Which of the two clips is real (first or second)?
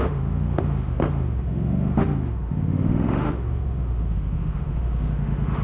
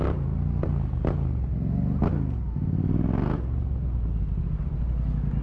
second